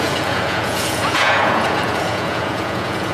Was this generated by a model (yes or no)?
yes